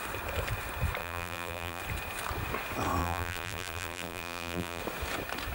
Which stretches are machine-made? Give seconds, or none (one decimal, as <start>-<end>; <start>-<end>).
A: 1.0-1.8; 3.0-4.8

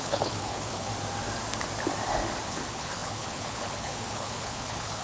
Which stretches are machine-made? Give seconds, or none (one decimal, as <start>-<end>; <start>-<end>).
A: 0.0-0.9; 2.5-5.0

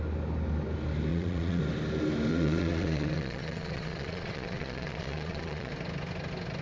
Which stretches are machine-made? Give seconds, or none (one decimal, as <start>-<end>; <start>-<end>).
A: 1.1-1.6; 2.3-5.7

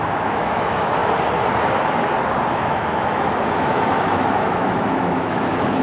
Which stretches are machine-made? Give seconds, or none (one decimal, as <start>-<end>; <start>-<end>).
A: 0.0-1.0; 2.5-5.8

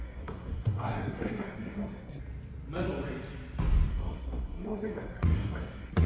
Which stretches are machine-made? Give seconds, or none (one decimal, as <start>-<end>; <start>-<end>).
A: 0.0-2.2; 3.9-6.1